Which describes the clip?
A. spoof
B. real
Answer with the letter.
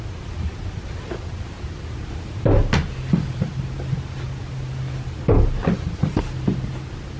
B